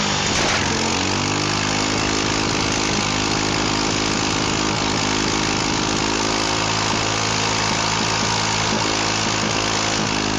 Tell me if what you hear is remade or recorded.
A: recorded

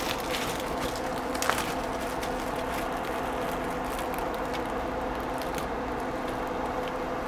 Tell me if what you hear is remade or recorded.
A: recorded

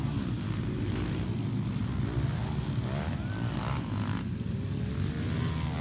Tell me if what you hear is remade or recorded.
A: recorded